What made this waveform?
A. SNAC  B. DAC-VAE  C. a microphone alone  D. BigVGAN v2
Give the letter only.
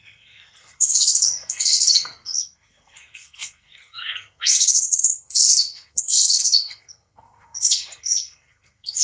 A